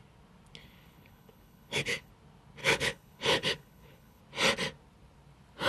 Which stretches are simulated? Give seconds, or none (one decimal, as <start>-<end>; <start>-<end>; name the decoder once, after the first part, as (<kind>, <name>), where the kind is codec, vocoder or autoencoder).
0.6-2.1 (codec, HILCodec); 2.6-4.2